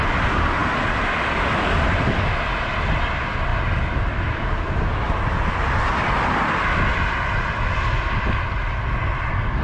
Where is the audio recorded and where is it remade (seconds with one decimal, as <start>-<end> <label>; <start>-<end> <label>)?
0.0-9.6 recorded